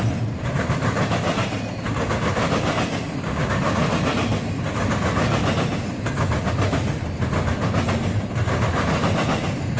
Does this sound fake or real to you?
real